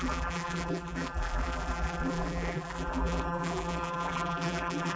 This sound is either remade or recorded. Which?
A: remade